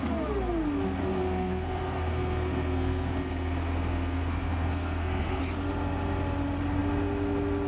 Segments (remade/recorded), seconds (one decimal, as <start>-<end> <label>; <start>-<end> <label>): 0.0-1.0 recorded; 1.0-5.4 remade; 5.4-7.7 recorded